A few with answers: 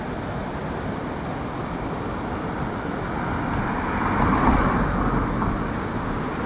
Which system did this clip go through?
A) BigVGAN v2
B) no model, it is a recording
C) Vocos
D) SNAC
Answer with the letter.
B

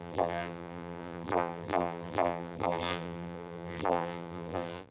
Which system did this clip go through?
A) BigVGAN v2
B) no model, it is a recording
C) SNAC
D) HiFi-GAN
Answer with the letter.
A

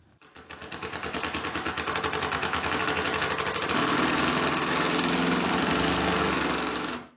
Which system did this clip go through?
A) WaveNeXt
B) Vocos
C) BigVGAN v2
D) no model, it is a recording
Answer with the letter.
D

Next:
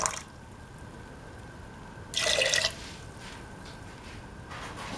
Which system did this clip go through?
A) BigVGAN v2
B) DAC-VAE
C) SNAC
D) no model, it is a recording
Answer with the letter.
D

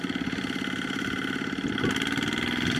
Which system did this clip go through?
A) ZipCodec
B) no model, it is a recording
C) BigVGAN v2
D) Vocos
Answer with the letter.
B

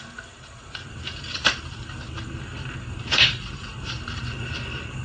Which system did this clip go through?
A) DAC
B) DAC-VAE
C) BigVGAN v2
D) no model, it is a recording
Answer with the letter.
C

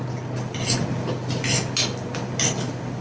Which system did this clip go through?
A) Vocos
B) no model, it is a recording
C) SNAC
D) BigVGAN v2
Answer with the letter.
B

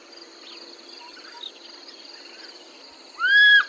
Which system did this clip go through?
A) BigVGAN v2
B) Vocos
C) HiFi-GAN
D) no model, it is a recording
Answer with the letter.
A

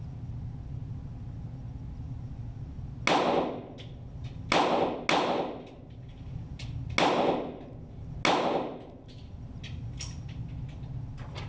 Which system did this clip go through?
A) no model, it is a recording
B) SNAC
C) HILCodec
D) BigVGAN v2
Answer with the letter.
A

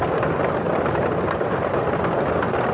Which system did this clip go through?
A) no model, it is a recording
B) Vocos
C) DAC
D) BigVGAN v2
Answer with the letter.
A